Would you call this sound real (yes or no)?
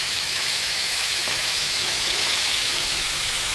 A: no